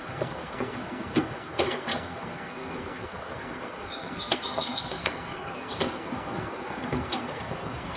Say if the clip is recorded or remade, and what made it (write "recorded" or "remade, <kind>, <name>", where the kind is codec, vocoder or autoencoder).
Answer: remade, codec, SNAC